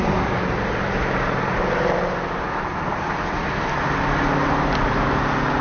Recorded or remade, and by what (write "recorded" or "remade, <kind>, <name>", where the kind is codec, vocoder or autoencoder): recorded